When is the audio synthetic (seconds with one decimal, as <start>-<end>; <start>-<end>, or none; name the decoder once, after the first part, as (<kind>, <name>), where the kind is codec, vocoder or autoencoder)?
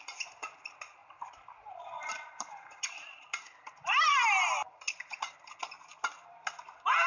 1.0-4.8 (vocoder, BigVGAN v2)